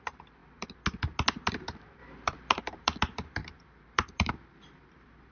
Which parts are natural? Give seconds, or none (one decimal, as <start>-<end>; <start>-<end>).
0.4-1.5